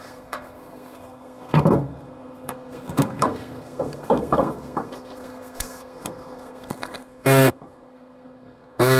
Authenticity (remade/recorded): remade